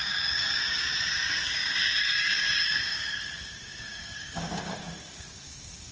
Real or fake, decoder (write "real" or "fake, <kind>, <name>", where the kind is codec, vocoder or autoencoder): fake, codec, DAC